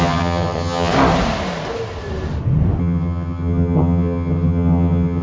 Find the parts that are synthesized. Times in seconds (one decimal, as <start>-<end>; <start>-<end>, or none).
0.0-0.9; 2.8-5.2